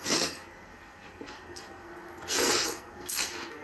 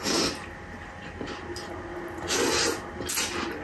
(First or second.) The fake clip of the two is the first